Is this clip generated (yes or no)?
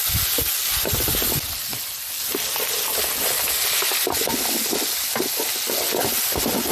no